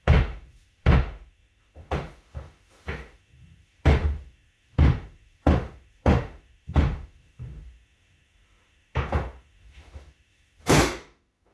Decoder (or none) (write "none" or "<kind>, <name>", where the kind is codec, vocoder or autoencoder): autoencoder, DAC-VAE